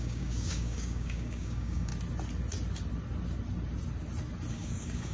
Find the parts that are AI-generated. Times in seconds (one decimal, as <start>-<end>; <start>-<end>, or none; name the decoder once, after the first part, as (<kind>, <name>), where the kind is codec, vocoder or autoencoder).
0.0-1.9 (codec, DAC); 4.5-5.1